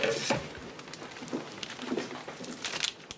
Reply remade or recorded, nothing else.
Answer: recorded